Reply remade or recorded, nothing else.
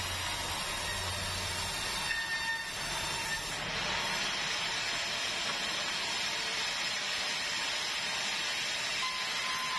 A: recorded